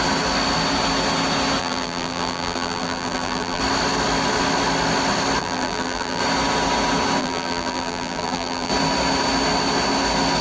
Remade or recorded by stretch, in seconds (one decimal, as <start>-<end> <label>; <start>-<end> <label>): 0.0-1.6 recorded; 1.6-3.6 remade; 3.6-5.4 recorded; 5.4-6.2 remade; 6.2-7.2 recorded; 7.2-8.7 remade; 8.7-10.4 recorded